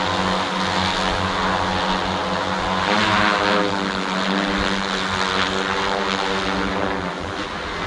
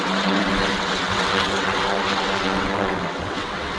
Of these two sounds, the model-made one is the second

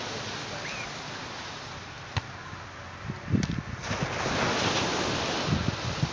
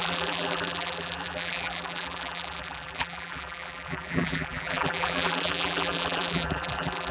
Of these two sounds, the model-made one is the second